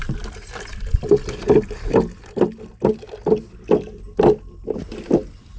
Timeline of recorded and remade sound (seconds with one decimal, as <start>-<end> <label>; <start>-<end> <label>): 0.0-5.6 recorded